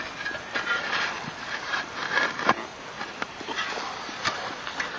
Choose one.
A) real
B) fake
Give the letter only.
A